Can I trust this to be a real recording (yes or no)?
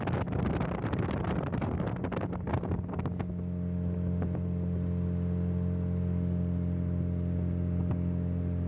yes